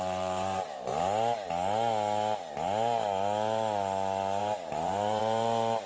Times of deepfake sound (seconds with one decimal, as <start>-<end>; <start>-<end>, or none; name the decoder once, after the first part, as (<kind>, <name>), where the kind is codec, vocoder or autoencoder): 0.0-0.9 (vocoder, BigVGAN v2); 4.4-5.2